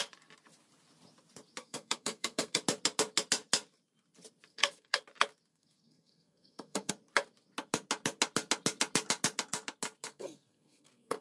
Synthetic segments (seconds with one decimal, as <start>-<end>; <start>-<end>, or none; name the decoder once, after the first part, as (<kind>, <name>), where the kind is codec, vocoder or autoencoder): 1.6-2.6 (codec, SNAC); 4.5-5.0; 5.5-6.9; 10.1-11.2